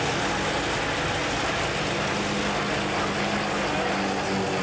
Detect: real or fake real